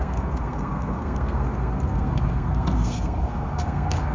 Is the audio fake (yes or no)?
yes